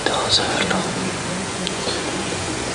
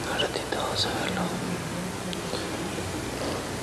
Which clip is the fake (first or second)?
first